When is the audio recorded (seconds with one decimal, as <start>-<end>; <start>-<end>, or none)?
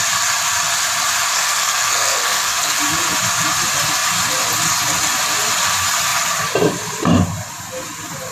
0.0-1.3; 2.8-8.3